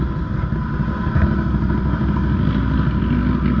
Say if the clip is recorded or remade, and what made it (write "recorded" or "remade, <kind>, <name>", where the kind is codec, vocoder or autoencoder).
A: recorded